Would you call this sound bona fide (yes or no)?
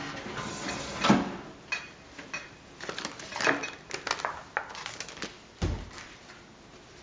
yes